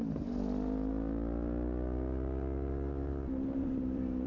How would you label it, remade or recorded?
remade